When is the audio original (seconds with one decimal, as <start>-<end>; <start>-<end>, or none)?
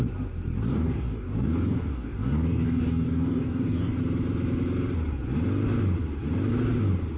0.0-0.6; 4.0-7.2